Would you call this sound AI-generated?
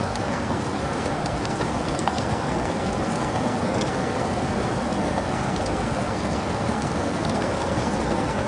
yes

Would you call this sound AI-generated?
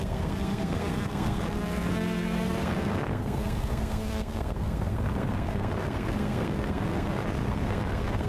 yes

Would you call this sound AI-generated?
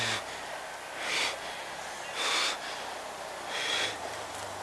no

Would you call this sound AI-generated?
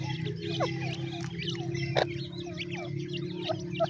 no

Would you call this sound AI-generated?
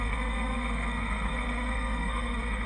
yes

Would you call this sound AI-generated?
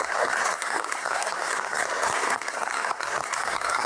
yes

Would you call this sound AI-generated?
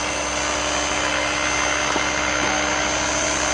no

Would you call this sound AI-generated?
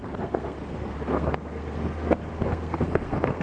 yes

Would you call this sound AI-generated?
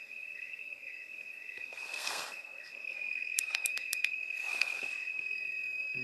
yes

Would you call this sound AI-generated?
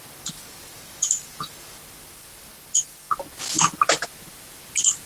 no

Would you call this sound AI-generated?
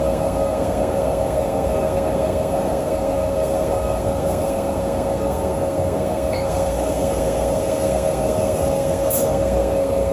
yes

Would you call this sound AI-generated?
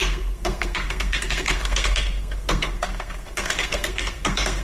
yes